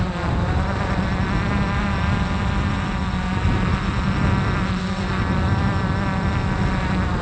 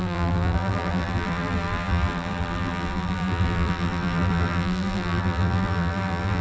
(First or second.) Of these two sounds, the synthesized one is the second